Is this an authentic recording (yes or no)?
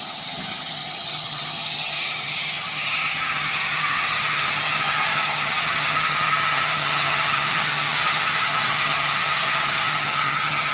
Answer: no